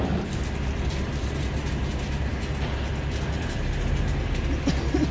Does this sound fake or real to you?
real